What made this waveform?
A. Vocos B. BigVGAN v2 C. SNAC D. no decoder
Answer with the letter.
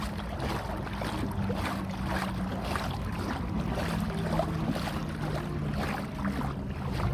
D